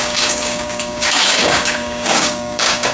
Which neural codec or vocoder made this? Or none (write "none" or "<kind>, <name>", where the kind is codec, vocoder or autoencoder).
codec, DAC